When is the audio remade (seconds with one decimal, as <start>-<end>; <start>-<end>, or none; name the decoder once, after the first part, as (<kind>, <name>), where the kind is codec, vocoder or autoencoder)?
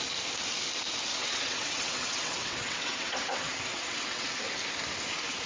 1.1-4.4 (vocoder, WaveNeXt)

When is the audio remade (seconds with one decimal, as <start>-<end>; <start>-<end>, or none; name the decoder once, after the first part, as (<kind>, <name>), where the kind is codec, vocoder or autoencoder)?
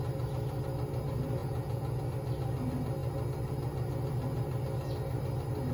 1.4-2.0 (vocoder, Vocos)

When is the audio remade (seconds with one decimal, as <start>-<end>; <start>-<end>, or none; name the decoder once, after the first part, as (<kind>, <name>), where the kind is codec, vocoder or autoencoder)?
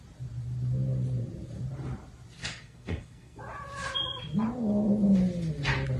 2.4-3.4 (codec, SNAC)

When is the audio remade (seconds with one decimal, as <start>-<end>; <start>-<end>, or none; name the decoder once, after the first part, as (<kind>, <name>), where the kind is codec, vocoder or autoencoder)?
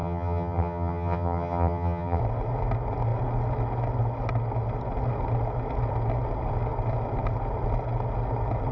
0.0-2.2 (vocoder, HiFi-GAN)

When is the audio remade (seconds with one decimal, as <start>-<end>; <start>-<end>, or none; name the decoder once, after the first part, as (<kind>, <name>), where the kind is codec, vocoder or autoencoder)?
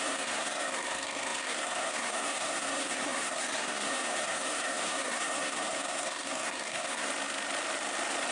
0.0-7.1 (codec, SNAC)